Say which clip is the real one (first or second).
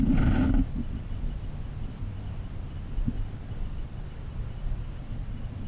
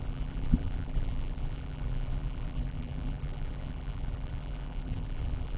first